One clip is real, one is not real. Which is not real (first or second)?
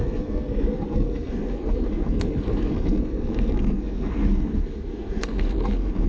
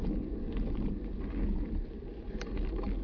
first